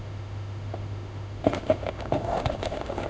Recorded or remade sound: remade